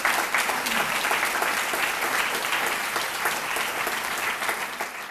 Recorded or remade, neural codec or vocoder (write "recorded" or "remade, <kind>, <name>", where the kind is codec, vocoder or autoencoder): recorded